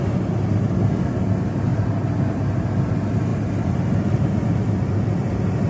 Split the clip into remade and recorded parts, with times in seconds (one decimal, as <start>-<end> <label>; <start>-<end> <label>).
0.0-5.7 recorded